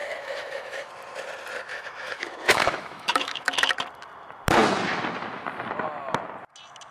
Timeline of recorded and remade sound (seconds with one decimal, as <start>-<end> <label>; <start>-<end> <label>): 0.0-0.9 remade; 0.9-1.7 recorded; 1.7-3.7 remade; 3.7-6.9 recorded